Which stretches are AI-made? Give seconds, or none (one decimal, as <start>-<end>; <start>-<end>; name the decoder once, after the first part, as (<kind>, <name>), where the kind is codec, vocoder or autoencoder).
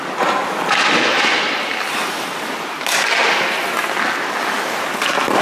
none